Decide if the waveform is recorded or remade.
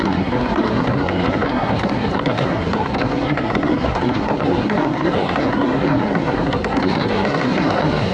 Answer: remade